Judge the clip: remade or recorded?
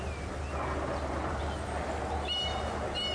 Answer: recorded